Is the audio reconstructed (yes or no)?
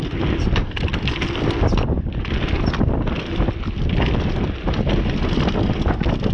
no